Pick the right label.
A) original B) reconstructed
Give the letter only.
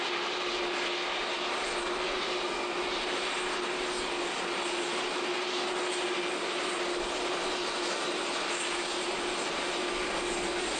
A